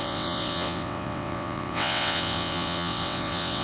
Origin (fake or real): fake